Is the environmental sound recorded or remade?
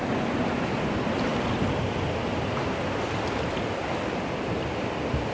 recorded